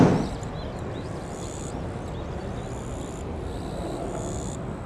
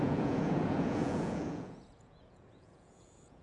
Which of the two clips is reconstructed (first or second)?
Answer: second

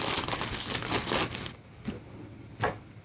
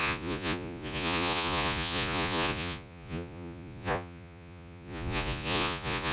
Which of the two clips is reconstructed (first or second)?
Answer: second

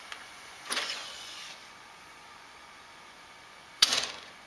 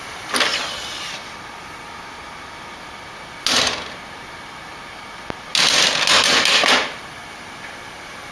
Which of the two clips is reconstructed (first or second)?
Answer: first